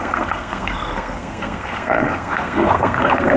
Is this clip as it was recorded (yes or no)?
no